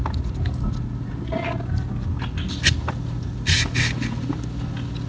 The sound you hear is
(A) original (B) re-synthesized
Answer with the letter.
A